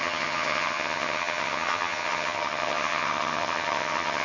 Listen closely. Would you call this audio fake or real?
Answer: fake